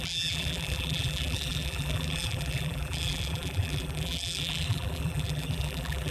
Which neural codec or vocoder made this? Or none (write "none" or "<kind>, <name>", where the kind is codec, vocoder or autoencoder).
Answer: vocoder, BigVGAN v2